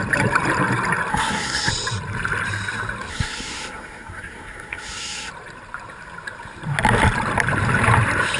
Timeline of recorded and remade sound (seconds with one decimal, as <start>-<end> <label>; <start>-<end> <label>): 0.0-1.1 recorded; 1.1-1.7 remade; 1.7-3.1 recorded; 3.1-5.3 remade; 5.3-8.4 recorded